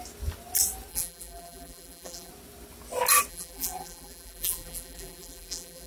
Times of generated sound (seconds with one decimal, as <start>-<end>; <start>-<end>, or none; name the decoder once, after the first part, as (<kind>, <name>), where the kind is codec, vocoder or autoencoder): 0.9-2.3 (vocoder, BigVGAN v2); 3.3-5.9